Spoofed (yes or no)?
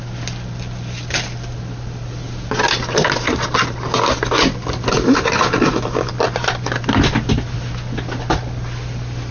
no